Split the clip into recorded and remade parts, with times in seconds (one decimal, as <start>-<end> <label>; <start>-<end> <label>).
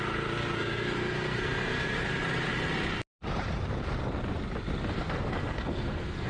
0.0-2.1 remade; 2.1-4.9 recorded; 4.9-6.3 remade